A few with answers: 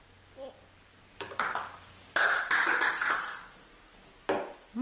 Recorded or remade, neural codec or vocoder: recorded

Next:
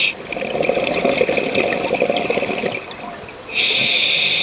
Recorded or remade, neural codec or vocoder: recorded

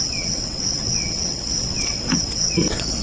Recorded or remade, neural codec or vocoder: remade, vocoder, WaveNeXt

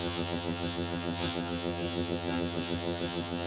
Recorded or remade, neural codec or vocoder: remade, vocoder, HiFi-GAN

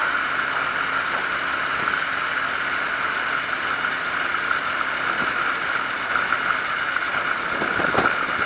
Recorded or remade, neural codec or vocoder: recorded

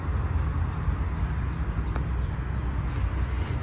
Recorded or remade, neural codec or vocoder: recorded